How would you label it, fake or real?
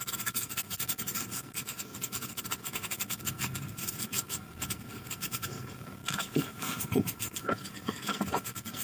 fake